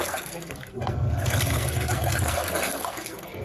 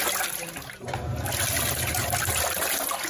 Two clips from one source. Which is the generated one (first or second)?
first